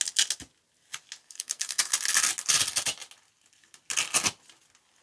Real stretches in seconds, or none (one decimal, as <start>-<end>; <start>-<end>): 0.0-1.2; 1.9-5.0